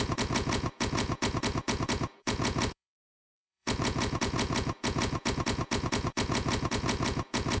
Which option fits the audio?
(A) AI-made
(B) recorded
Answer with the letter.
A